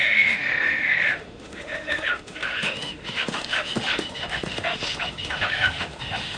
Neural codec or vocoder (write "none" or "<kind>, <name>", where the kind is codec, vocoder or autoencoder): autoencoder, DAC-VAE